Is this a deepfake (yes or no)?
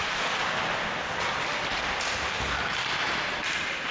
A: no